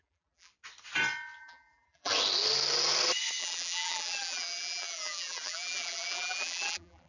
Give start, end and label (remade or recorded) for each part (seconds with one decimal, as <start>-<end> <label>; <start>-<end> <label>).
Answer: 0.0-0.5 remade; 0.5-1.4 recorded; 1.4-2.1 remade; 2.1-3.4 recorded; 3.4-7.1 remade